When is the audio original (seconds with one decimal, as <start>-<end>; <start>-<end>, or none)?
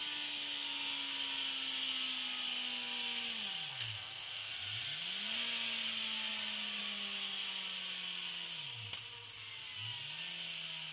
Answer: 0.0-3.7; 4.5-10.9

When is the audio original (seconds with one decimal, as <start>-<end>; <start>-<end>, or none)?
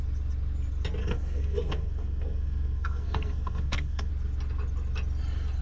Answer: 0.0-1.0; 4.1-5.6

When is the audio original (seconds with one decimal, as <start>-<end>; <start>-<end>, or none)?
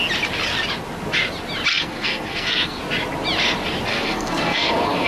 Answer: 0.0-1.7; 2.8-3.9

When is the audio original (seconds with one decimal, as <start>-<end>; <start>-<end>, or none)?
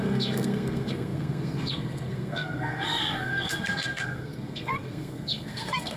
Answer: none